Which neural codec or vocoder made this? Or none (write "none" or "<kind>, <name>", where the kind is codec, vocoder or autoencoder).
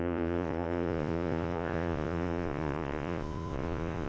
vocoder, Vocos